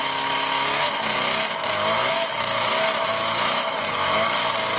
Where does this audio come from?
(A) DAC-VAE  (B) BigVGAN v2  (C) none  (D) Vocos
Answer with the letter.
A